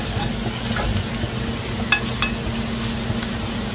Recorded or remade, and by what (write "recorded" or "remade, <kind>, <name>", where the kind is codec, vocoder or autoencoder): recorded